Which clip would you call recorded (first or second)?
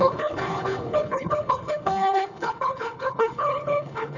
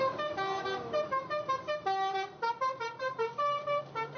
second